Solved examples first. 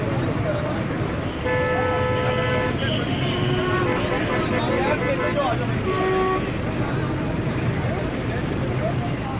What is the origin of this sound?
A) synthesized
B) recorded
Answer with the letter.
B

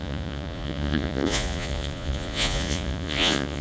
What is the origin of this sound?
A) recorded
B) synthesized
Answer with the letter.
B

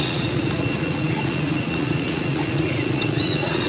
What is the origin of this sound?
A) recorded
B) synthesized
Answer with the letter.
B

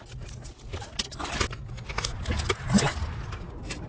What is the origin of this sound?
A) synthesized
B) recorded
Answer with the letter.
B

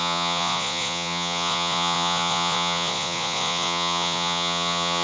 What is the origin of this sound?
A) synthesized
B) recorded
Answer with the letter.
A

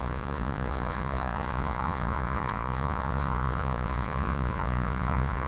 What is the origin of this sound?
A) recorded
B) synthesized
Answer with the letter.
B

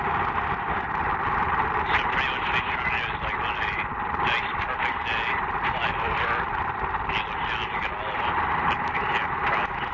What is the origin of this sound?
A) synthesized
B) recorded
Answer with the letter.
B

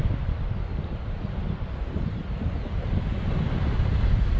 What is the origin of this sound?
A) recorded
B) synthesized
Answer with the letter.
A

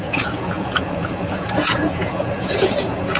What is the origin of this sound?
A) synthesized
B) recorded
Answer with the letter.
A